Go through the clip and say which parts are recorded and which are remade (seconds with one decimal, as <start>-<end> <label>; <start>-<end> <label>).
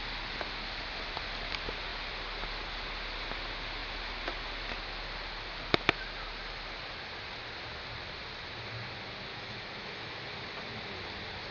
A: 0.0-9.3 recorded; 9.3-10.2 remade; 10.2-11.5 recorded